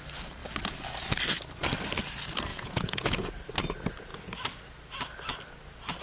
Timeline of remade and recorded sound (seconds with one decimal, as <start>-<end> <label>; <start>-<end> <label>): 0.0-2.5 recorded; 2.5-3.3 remade; 3.3-6.0 recorded